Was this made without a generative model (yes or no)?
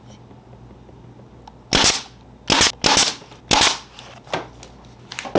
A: yes